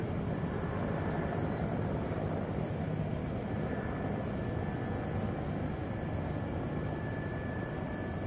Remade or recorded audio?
recorded